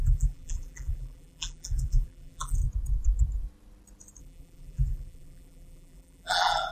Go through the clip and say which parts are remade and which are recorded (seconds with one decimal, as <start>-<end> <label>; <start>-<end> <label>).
0.0-2.6 remade; 2.6-4.2 recorded; 4.2-6.7 remade